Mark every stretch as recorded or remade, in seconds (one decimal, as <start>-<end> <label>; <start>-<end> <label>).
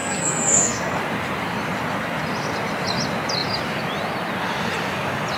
0.0-1.0 remade; 1.0-5.4 recorded